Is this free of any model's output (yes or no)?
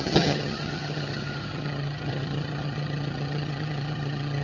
no